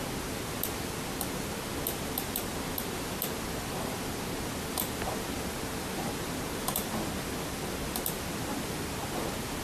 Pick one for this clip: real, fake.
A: real